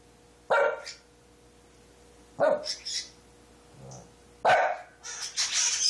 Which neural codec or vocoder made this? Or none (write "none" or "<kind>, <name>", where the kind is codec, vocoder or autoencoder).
none